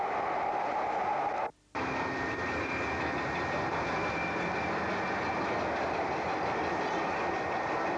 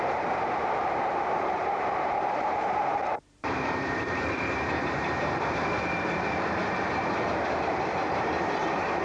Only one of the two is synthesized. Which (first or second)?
second